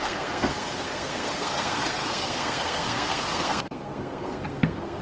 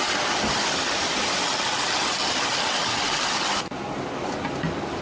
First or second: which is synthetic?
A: first